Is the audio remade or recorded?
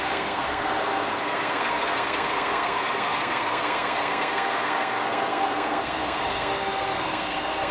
remade